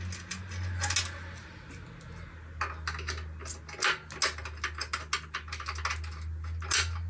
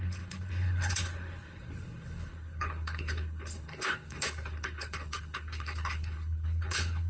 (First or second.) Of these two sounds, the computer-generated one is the second